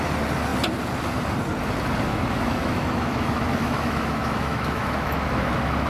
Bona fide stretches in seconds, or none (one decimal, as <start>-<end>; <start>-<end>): 0.0-2.1